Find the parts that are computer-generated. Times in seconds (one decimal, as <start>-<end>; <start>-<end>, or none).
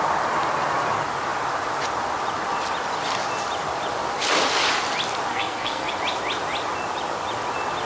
5.3-5.9